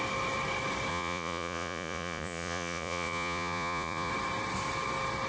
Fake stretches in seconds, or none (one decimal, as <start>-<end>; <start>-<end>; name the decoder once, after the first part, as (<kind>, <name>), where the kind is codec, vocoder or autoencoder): 0.9-4.1 (vocoder, Vocos)